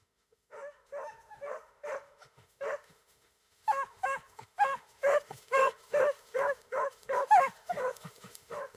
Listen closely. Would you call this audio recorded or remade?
remade